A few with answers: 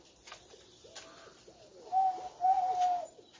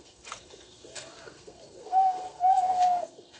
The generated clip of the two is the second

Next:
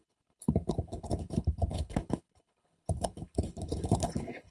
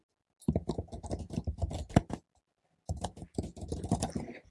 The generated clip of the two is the first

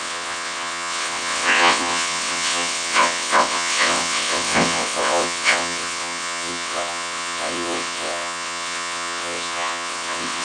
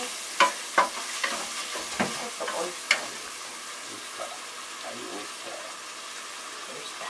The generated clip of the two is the first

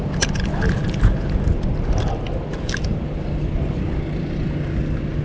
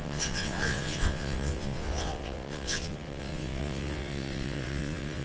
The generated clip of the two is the second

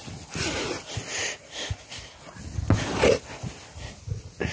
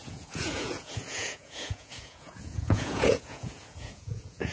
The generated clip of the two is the second